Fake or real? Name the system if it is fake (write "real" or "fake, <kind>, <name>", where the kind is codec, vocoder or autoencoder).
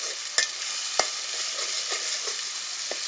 real